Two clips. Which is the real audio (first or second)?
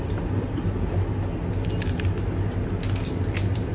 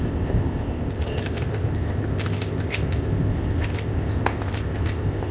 first